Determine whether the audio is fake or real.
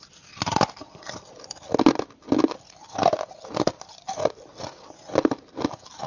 real